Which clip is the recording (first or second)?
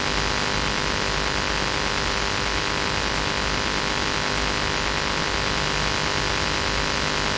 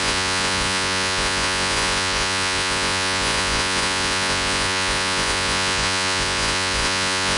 first